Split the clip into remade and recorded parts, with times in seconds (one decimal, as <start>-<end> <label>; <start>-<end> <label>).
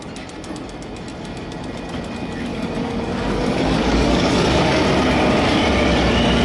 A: 0.0-2.5 recorded; 2.5-4.8 remade; 4.8-6.4 recorded